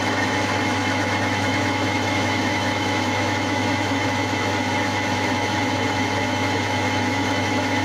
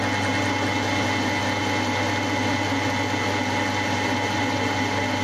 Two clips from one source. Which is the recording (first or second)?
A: second